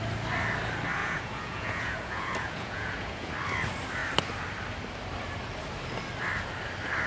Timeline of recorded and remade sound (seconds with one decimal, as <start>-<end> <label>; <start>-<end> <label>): 0.0-1.0 recorded; 1.0-3.3 remade; 3.3-7.1 recorded

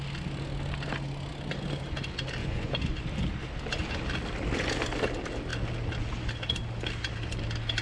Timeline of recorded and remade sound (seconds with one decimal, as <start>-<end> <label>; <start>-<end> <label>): 0.0-2.4 recorded; 2.4-2.9 remade; 2.9-7.8 recorded

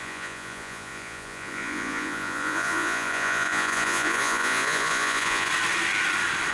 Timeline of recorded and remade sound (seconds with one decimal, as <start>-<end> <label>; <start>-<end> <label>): 0.0-5.5 remade; 5.5-6.5 recorded

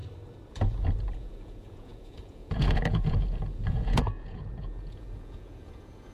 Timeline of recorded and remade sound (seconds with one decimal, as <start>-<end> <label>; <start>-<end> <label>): 0.0-0.5 recorded; 0.5-6.1 remade

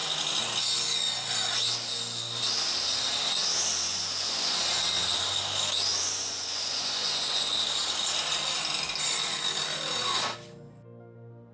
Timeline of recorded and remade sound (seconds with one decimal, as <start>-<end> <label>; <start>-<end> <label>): 0.0-3.9 recorded; 3.9-4.6 remade; 4.6-5.9 recorded; 5.9-7.5 remade; 7.5-11.5 recorded